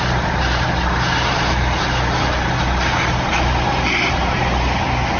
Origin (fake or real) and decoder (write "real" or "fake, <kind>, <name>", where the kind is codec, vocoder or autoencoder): real